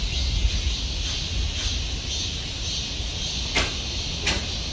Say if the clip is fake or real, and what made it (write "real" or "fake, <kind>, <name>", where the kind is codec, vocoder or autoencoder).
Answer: real